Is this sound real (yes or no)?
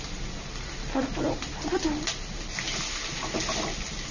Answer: yes